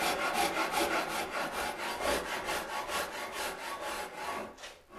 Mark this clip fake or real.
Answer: real